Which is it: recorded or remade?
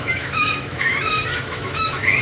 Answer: remade